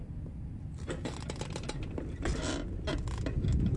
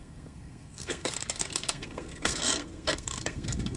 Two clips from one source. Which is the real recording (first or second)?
first